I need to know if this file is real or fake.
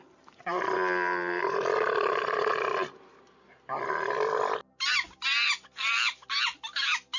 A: real